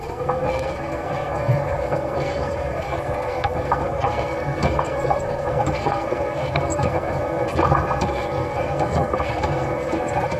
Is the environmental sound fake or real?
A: fake